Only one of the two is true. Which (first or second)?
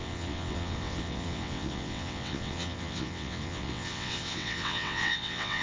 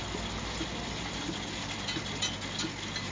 second